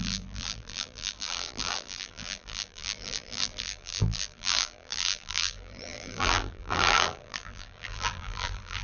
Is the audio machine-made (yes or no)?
yes